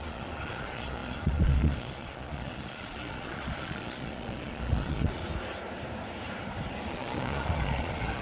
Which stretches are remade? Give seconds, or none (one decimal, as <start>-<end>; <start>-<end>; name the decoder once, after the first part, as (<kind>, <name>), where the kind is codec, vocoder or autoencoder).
0.0-5.2 (vocoder, Vocos); 6.9-8.2